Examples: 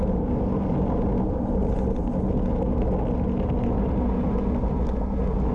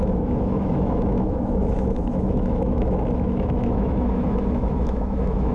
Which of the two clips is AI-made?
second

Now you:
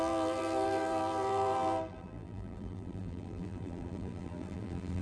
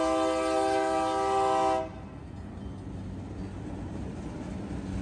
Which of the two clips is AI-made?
first